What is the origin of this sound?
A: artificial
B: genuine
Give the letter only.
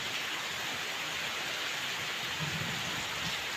B